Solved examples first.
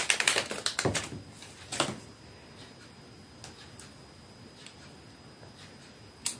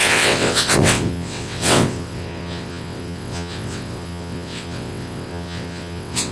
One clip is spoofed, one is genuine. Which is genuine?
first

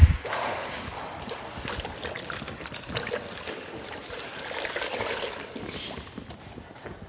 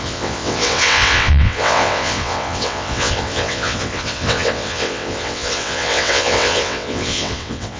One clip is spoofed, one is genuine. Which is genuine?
first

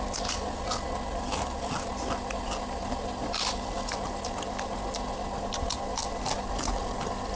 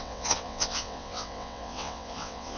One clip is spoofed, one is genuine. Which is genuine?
first